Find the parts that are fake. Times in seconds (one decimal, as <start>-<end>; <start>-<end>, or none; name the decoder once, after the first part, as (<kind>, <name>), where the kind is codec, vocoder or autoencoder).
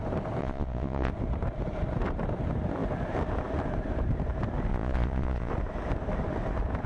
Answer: 0.4-1.1 (vocoder, Vocos); 4.7-5.5